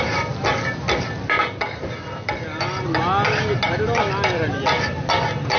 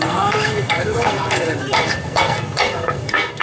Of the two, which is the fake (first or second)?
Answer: second